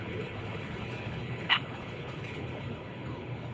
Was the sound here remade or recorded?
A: remade